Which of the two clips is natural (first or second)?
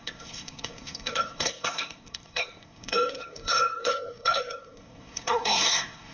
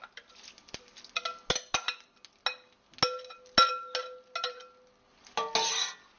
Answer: second